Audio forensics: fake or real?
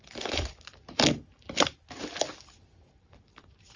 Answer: real